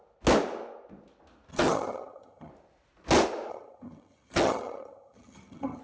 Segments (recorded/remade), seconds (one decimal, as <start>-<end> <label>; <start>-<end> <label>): 0.0-1.5 recorded; 1.5-2.5 remade; 2.5-3.5 recorded; 3.5-5.8 remade